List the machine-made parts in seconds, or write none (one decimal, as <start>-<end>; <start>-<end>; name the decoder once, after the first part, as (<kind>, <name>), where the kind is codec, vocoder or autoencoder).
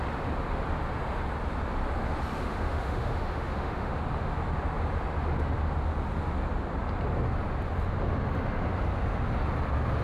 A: 2.4-4.0 (autoencoder, DAC-VAE)